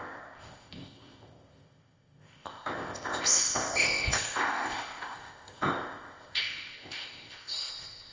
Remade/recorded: remade